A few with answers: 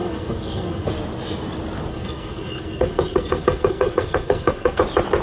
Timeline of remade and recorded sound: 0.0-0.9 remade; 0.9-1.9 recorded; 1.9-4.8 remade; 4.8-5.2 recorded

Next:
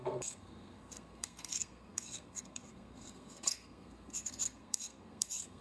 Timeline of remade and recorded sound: 0.0-5.6 remade

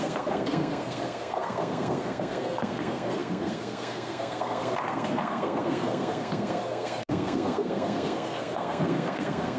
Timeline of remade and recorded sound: 0.0-9.6 remade

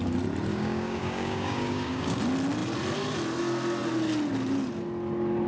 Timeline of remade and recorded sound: 0.0-0.5 recorded; 0.5-2.2 remade; 2.2-5.5 recorded

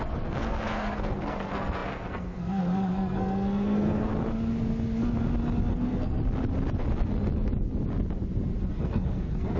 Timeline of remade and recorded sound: 0.0-4.1 remade; 4.1-5.7 recorded; 5.7-6.2 remade; 6.2-8.7 recorded; 8.7-9.6 remade

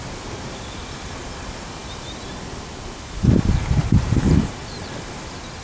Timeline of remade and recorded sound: 0.0-5.6 recorded

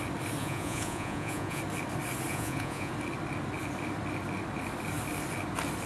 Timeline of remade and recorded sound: 0.0-0.4 recorded; 0.4-1.6 remade; 1.6-2.3 recorded; 2.3-2.9 remade; 2.9-5.9 recorded